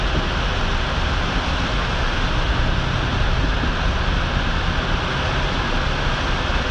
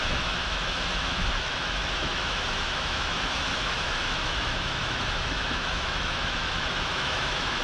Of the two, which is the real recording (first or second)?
first